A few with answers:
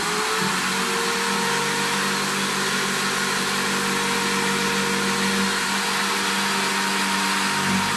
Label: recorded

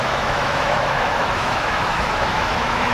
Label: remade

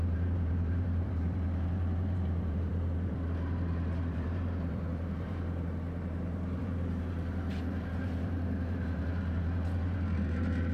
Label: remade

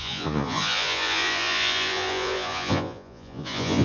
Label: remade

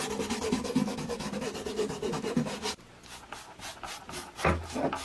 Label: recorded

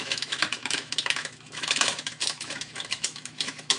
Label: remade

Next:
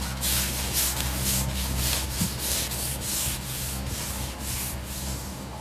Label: remade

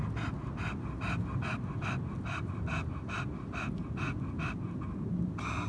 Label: recorded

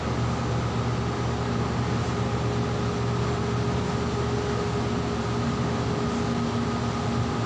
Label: recorded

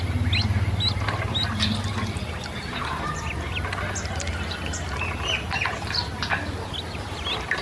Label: recorded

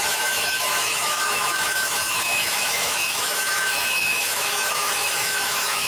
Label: remade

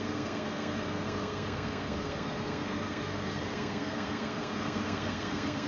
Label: remade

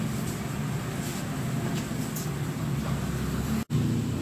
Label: recorded